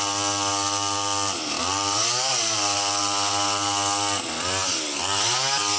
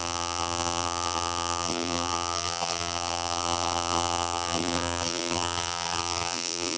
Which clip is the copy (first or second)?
second